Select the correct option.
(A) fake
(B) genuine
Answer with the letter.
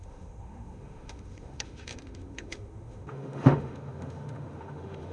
A